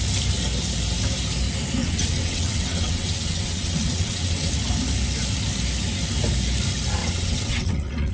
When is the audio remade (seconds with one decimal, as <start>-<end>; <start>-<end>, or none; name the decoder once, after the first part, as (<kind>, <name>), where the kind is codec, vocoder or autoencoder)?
1.8-4.5 (vocoder, WaveNeXt); 7.0-8.1